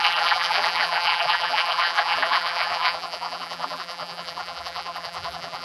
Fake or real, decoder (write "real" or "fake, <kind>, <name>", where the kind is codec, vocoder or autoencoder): fake, vocoder, BigVGAN v2